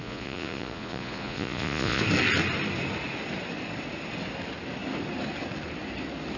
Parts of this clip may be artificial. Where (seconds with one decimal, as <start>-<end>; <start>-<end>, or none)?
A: 0.0-2.0